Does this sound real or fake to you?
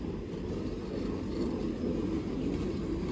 real